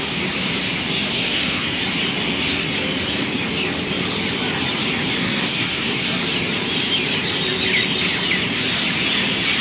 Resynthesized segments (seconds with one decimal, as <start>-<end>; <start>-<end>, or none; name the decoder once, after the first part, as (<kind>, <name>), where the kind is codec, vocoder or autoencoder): 1.1-1.8 (codec, SNAC); 5.2-6.2